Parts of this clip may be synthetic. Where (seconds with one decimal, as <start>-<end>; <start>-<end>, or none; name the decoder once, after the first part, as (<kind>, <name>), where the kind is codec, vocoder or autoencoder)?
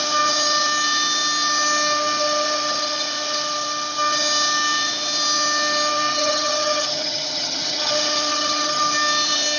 6.1-7.9 (vocoder, HiFi-GAN); 8.3-8.8